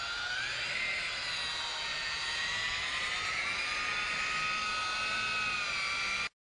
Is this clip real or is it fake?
real